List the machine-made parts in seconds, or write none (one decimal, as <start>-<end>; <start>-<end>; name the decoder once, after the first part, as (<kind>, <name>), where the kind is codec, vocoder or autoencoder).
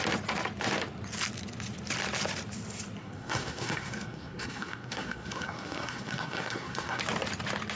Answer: 3.0-7.0 (codec, SNAC)